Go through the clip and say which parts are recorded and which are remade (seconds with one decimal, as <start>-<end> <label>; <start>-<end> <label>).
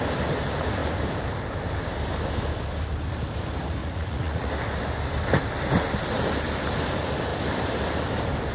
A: 0.0-3.8 recorded; 3.8-4.5 remade; 4.5-8.5 recorded